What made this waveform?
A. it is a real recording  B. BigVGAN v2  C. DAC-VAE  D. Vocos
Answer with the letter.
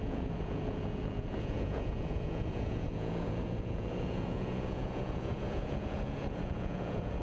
D